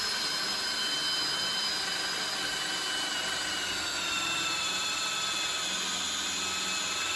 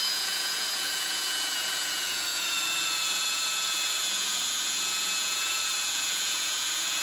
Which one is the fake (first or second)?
second